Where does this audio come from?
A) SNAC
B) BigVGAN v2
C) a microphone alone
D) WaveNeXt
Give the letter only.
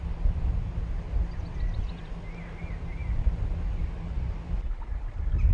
C